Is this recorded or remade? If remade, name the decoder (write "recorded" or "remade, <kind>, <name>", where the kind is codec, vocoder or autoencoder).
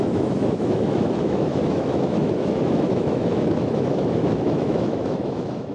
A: remade, autoencoder, DAC-VAE